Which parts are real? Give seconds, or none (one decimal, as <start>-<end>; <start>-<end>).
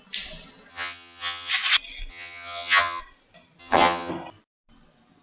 0.0-0.7; 1.5-2.1; 3.0-3.6; 4.1-5.2